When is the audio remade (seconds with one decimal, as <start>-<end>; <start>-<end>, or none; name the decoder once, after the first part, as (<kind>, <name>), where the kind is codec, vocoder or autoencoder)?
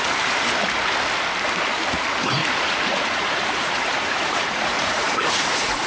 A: 2.4-5.9 (vocoder, Vocos)